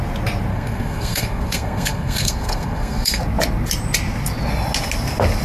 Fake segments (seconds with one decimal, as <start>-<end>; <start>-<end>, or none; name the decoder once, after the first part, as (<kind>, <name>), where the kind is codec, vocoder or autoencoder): 0.5-3.2 (codec, SNAC)